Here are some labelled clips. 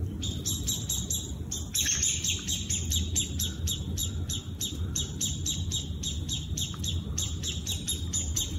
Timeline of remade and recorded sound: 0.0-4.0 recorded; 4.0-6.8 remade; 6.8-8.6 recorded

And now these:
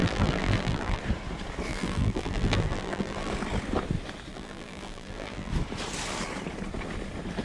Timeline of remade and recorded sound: 0.0-1.0 remade; 1.0-1.7 recorded; 1.7-3.3 remade; 3.3-4.3 recorded; 4.3-5.5 remade; 5.5-7.4 recorded

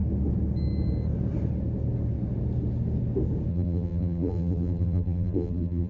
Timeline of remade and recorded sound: 0.0-3.5 recorded; 3.5-5.9 remade

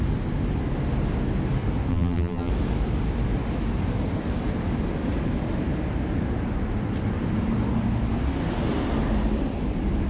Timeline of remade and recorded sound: 0.0-1.9 recorded; 1.9-2.5 remade; 2.5-10.1 recorded

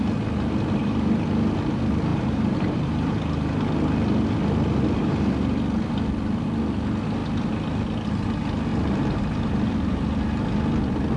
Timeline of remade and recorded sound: 0.0-2.1 recorded; 2.1-3.1 remade; 3.1-8.7 recorded; 8.7-9.2 remade; 9.2-11.2 recorded

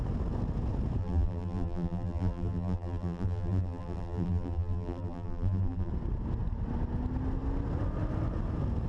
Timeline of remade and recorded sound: 0.0-1.0 recorded; 1.0-5.9 remade; 5.9-8.9 recorded

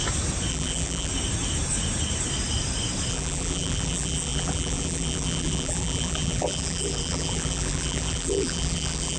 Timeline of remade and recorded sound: 0.0-0.5 recorded; 0.5-1.1 remade; 1.1-3.1 recorded; 3.1-9.2 remade

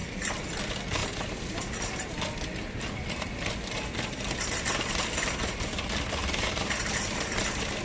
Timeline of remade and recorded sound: 0.0-0.6 remade; 0.6-1.0 recorded; 1.0-5.3 remade; 5.3-6.2 recorded; 6.2-7.8 remade